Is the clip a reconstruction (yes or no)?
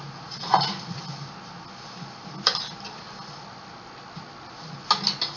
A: no